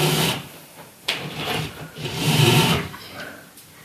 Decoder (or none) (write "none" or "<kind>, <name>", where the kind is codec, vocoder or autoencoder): vocoder, BigVGAN v2